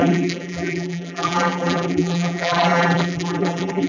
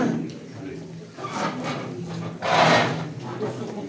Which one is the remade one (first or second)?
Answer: first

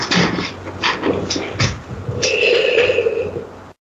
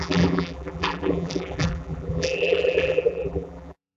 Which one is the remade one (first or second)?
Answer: second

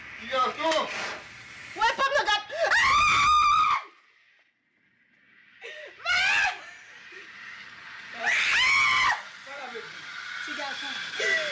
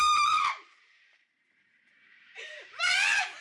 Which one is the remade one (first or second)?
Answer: second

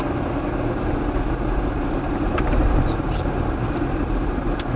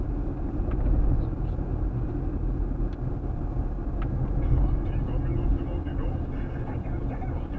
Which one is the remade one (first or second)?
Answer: first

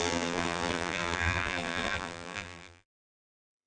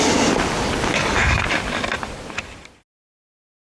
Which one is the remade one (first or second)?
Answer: first